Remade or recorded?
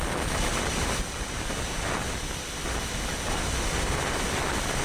recorded